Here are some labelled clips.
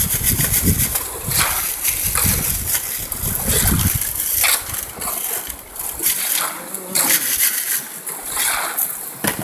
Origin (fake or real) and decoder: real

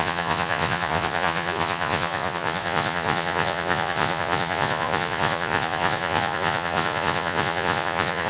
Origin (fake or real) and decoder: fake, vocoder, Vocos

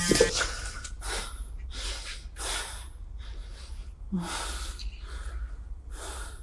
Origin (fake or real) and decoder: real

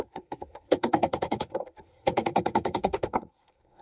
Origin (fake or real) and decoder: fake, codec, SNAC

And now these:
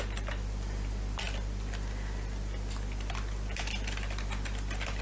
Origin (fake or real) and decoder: real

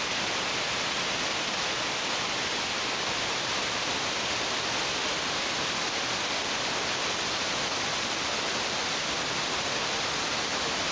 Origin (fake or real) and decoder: real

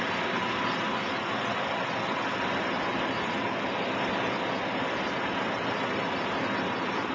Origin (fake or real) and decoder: real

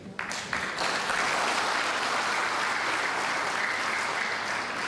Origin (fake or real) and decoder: real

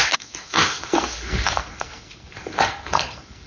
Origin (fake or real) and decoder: fake, codec, SNAC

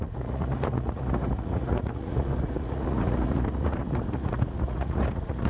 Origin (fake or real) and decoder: fake, vocoder, Vocos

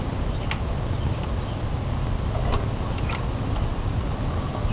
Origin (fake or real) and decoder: real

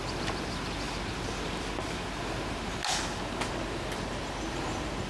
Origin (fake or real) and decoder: real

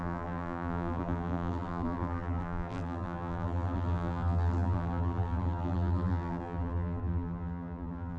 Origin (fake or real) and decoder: fake, vocoder, BigVGAN v2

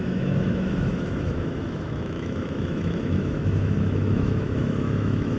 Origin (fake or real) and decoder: fake, autoencoder, DAC-VAE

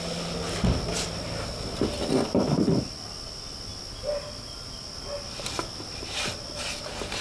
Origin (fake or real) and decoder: real